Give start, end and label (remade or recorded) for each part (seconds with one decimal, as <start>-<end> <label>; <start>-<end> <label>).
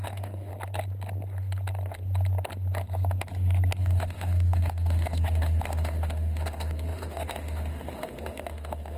0.0-0.5 remade; 0.5-3.8 recorded; 3.8-9.0 remade